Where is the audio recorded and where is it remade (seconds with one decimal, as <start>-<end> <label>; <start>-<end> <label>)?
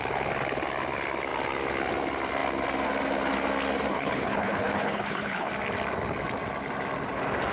0.0-3.9 recorded; 3.9-5.5 remade; 5.5-7.5 recorded